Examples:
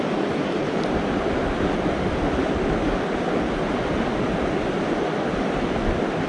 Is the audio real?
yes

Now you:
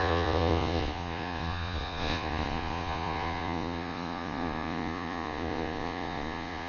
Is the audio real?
no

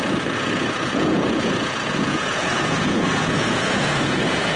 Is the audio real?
no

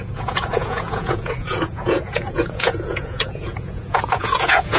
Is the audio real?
no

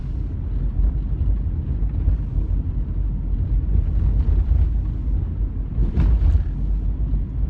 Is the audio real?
yes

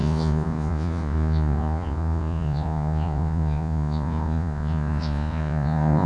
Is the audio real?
no